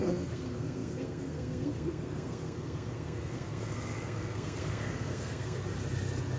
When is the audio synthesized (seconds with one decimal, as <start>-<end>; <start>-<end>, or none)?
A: 0.0-5.6